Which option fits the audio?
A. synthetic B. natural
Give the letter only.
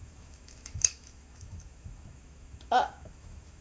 A